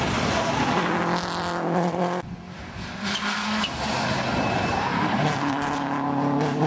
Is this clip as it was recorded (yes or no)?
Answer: yes